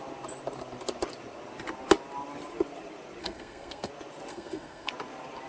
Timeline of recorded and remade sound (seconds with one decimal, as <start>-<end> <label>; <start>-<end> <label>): 0.0-3.2 recorded; 3.2-3.9 remade; 3.9-4.3 recorded; 4.3-4.9 remade; 4.9-5.5 recorded